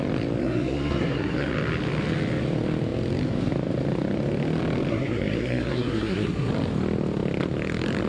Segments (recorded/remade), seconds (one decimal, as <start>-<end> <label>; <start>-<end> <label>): 0.0-0.4 recorded; 0.4-1.5 remade; 1.5-4.9 recorded; 4.9-6.5 remade; 6.5-8.1 recorded

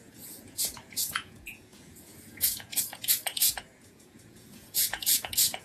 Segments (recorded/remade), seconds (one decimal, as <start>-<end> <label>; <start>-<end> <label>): 0.0-5.6 remade

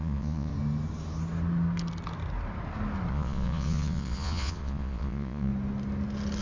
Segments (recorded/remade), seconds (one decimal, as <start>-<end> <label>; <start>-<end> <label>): 0.0-0.5 remade; 0.5-3.1 recorded; 3.1-5.5 remade; 5.5-6.4 recorded

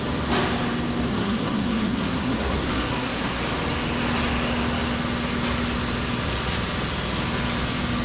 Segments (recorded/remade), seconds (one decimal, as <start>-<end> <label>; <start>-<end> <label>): 0.0-1.1 recorded; 1.1-3.4 remade; 3.4-8.0 recorded

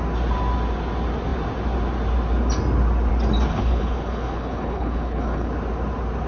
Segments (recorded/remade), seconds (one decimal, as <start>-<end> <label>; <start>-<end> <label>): 0.0-3.5 recorded; 3.5-5.5 remade; 5.5-6.3 recorded